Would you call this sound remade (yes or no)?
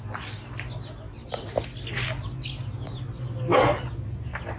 no